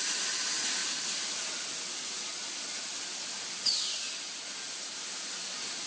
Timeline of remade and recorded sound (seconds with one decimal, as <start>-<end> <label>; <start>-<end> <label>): 0.0-0.8 recorded; 0.8-4.3 remade; 4.3-5.9 recorded